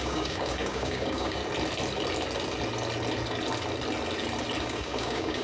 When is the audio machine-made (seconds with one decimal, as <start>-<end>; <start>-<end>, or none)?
0.0-1.4; 4.6-5.4